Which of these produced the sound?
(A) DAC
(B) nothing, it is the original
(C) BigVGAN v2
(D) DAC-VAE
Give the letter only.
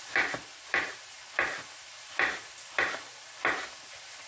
C